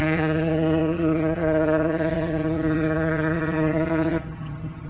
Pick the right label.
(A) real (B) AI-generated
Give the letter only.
B